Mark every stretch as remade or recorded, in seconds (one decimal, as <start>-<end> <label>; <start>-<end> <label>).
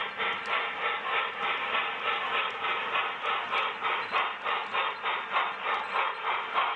0.0-6.8 recorded